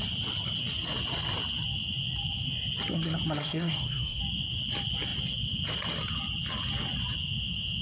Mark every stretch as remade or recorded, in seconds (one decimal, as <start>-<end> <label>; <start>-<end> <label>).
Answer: 0.0-3.4 recorded; 3.4-4.2 remade; 4.2-7.8 recorded